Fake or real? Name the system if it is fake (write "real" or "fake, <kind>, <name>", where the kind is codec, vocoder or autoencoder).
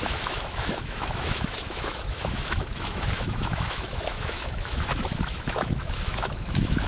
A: fake, autoencoder, DAC-VAE